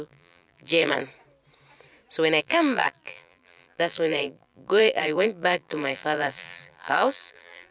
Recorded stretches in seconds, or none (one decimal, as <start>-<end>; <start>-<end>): 1.0-2.4